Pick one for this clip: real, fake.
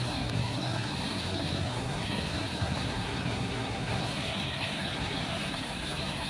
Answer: fake